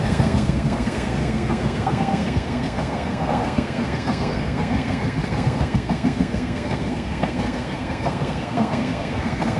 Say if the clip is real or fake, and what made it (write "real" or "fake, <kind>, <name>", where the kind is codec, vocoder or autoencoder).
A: fake, codec, SNAC